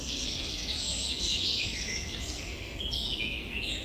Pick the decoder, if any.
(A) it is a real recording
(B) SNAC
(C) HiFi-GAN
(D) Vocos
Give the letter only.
B